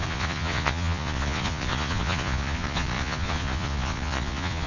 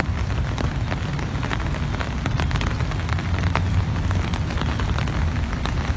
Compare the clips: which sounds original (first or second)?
second